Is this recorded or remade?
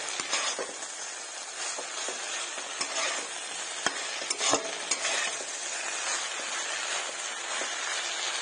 recorded